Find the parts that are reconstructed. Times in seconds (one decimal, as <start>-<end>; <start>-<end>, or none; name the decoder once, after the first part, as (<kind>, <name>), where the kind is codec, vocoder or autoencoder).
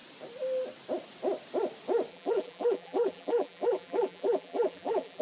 2.1-5.2 (vocoder, BigVGAN v2)